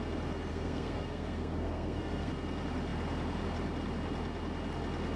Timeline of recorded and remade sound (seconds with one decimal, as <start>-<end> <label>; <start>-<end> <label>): 0.0-0.5 recorded; 0.5-2.3 remade; 2.3-5.2 recorded

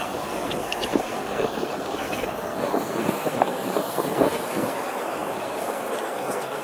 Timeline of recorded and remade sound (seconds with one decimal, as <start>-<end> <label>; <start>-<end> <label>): 0.0-6.6 remade